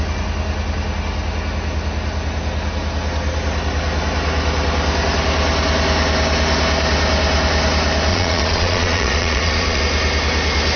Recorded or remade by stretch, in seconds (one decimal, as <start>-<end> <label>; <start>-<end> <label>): 0.0-8.1 recorded; 8.1-9.8 remade; 9.8-10.8 recorded